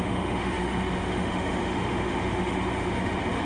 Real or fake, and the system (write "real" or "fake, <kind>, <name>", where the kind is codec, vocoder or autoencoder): fake, autoencoder, DAC-VAE